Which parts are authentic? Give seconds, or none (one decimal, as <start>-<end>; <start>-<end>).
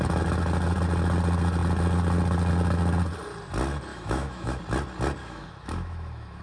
0.0-3.9; 4.6-5.2